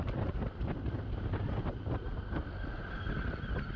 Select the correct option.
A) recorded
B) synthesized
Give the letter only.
A